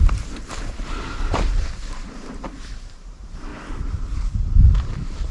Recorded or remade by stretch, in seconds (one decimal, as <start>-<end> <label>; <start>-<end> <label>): 0.0-3.5 remade; 3.5-4.3 recorded; 4.3-5.3 remade